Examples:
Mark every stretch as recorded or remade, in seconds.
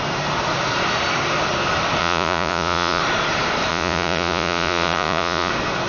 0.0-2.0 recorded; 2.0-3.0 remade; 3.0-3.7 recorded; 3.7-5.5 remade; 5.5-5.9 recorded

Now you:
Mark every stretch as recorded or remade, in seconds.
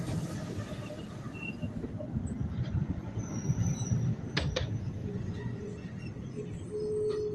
0.0-2.4 recorded; 2.4-3.1 remade; 3.1-5.0 recorded; 5.0-6.0 remade; 6.0-7.3 recorded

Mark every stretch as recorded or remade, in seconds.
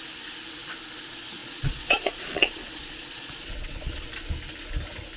0.0-1.4 recorded; 1.4-4.1 remade; 4.1-5.2 recorded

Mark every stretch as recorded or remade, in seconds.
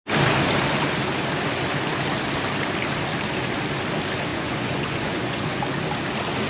0.0-4.3 recorded; 4.3-5.6 remade; 5.6-6.5 recorded